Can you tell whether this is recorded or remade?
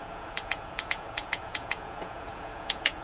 remade